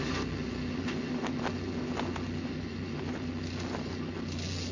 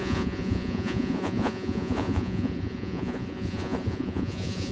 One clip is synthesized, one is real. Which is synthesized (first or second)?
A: second